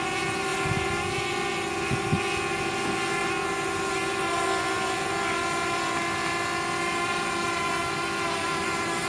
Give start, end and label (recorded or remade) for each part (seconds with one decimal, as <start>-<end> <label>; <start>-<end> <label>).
0.0-9.1 recorded

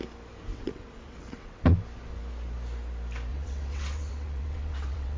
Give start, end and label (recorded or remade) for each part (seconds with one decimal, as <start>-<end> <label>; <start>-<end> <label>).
0.0-0.5 recorded; 0.5-1.6 remade; 1.6-3.3 recorded; 3.3-5.2 remade